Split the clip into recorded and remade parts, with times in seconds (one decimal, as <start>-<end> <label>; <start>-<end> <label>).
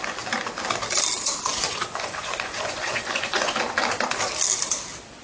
0.0-1.5 recorded; 1.5-3.5 remade; 3.5-5.2 recorded